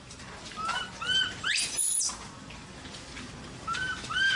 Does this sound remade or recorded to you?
recorded